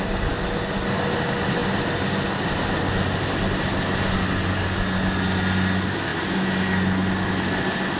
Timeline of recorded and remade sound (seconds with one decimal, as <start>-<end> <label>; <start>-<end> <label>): 0.0-8.0 recorded